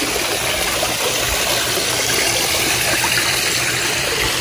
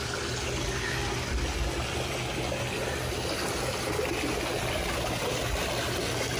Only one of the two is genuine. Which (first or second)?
second